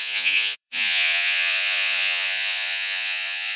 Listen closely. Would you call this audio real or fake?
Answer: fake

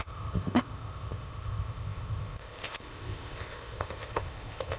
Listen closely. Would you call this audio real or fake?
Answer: fake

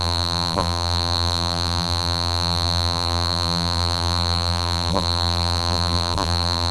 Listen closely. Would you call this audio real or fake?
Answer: fake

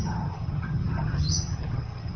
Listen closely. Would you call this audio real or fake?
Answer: fake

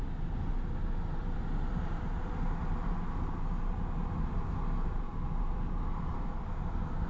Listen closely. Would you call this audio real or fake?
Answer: real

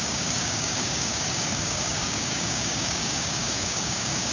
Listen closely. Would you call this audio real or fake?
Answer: fake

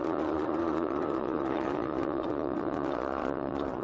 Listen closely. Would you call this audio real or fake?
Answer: fake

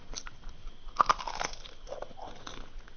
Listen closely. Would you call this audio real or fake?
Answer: real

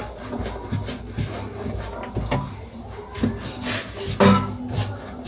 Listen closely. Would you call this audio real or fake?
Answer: real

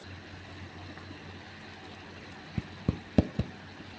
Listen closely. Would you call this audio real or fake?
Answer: real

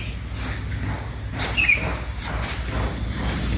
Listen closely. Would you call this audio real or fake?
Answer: real